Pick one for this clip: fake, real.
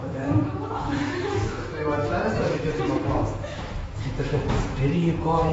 fake